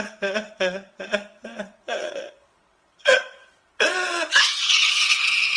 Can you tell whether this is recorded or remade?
remade